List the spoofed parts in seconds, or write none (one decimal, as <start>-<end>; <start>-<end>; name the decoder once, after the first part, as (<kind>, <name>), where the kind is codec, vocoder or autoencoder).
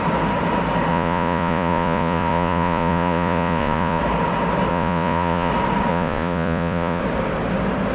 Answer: 0.9-4.0 (vocoder, Vocos); 4.7-5.5; 5.9-7.0